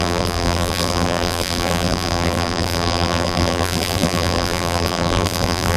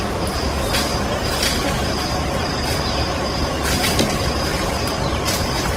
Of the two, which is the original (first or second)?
second